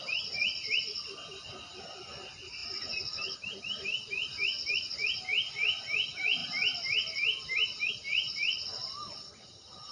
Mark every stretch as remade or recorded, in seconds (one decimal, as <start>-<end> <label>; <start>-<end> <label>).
0.0-9.9 recorded